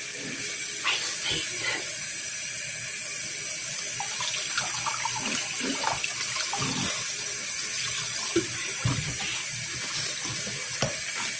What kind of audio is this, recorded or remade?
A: recorded